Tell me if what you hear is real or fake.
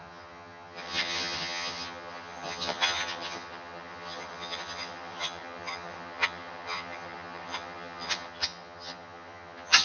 fake